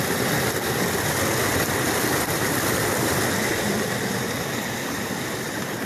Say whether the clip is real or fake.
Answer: real